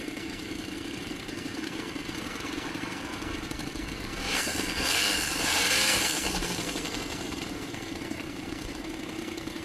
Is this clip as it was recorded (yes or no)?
no